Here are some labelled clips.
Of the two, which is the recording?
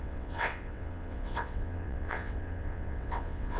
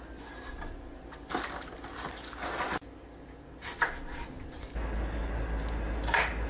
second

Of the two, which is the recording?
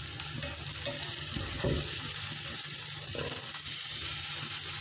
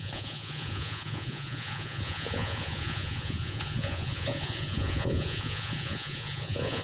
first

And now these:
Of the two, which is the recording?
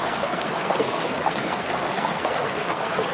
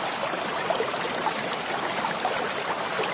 second